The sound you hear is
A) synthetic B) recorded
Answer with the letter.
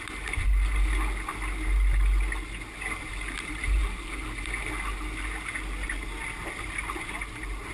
B